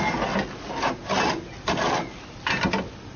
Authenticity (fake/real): real